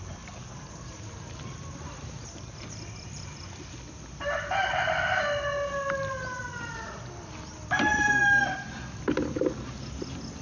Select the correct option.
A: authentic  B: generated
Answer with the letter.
A